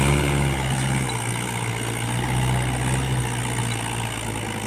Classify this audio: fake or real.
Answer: real